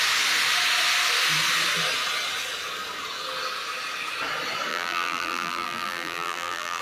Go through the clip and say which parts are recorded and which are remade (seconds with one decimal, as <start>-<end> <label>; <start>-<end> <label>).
0.0-4.7 recorded; 4.7-6.8 remade